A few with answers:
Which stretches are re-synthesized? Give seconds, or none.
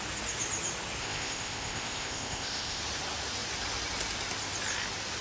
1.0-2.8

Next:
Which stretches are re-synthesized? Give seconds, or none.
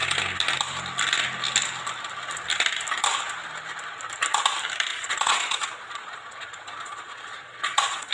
4.9-8.1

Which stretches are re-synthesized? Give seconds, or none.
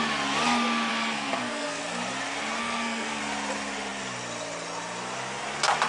0.9-1.8; 2.6-3.2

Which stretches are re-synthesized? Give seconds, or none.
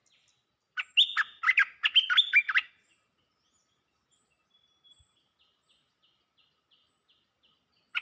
none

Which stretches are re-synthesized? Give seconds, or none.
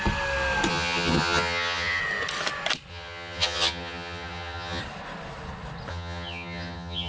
0.7-2.0; 2.9-4.8; 5.9-7.1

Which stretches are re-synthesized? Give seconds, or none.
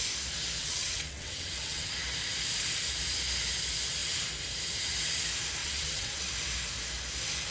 0.6-1.9; 5.6-6.3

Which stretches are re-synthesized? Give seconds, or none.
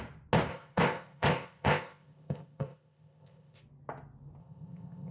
0.5-3.6; 4.4-5.1